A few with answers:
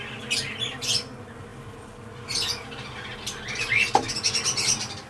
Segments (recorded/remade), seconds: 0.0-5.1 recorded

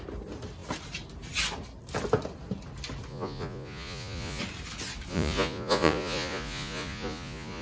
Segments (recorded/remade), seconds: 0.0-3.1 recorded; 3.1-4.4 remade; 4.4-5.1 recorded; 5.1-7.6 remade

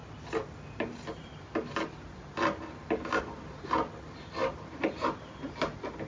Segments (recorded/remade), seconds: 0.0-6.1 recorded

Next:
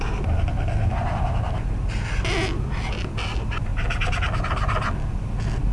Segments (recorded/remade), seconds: 0.0-5.7 recorded

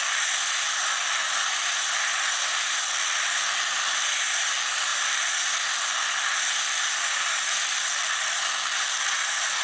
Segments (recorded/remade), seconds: 0.0-1.2 recorded; 1.2-2.8 remade; 2.8-9.6 recorded

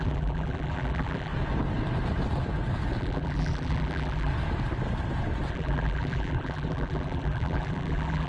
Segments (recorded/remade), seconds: 0.0-1.3 remade; 1.3-3.0 recorded; 3.0-4.3 remade; 4.3-5.5 recorded; 5.5-8.3 remade

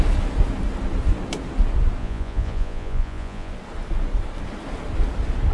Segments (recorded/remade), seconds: 0.0-2.0 recorded; 2.0-3.5 remade; 3.5-5.5 recorded